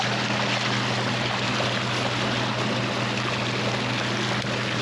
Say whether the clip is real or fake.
real